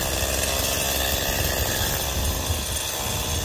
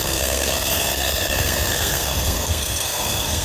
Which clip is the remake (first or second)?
second